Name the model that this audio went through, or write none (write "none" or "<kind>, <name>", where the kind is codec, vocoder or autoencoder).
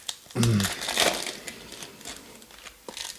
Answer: none